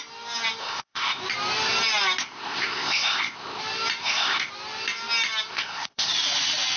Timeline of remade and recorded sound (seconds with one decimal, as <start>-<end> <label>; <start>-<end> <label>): 0.0-0.6 recorded; 0.6-1.2 remade; 1.2-2.2 recorded; 2.2-3.6 remade; 3.6-4.0 recorded; 4.0-4.5 remade; 4.5-5.5 recorded; 5.5-6.1 remade; 6.1-6.8 recorded